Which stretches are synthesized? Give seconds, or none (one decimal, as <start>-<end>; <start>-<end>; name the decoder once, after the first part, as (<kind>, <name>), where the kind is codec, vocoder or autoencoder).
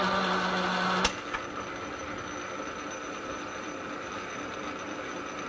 none